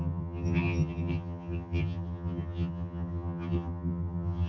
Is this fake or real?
fake